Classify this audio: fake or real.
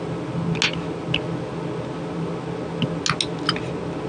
real